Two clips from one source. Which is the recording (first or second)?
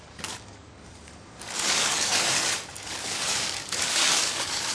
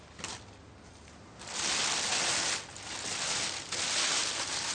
second